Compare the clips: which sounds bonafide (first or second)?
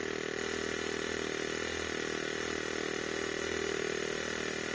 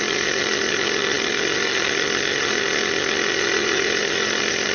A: first